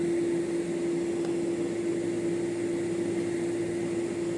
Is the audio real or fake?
real